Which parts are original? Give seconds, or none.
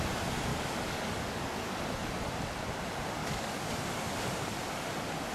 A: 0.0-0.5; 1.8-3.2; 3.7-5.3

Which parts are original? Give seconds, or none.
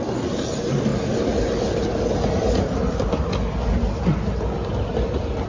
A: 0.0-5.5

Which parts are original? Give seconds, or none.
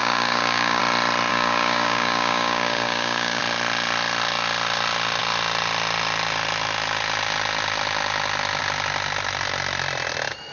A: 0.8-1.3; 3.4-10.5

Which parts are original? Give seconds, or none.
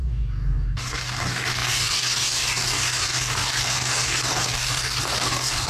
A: none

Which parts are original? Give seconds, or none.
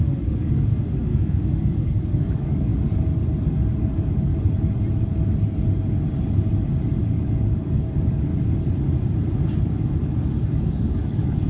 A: 2.7-3.8; 4.3-7.0; 8.3-9.6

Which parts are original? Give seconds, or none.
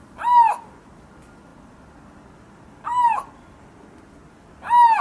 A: 0.0-5.0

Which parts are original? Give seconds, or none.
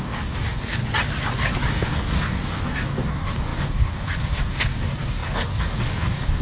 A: 0.8-1.7